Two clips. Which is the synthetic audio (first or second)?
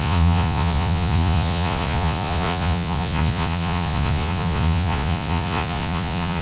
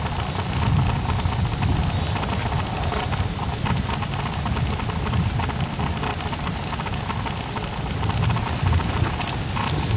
first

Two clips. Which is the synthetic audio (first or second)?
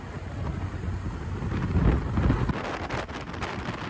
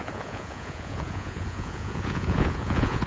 second